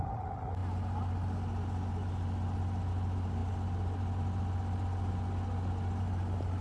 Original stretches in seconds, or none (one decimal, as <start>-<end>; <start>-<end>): 0.0-6.6